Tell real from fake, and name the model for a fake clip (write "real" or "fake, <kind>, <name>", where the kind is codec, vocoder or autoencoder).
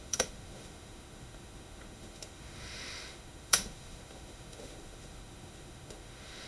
fake, autoencoder, DAC-VAE